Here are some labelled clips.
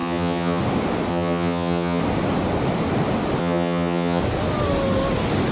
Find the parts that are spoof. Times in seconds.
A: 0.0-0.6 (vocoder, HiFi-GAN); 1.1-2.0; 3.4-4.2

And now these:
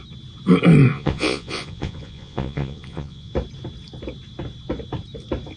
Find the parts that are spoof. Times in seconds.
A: 0.9-3.3 (vocoder, Vocos)

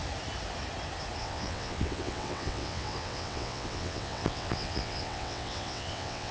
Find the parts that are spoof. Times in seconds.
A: 1.2-6.3 (vocoder, WaveNeXt)

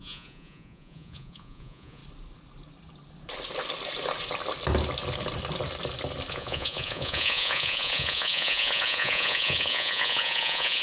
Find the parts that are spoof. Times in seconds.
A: 0.0-2.0 (vocoder, Vocos); 6.3-10.8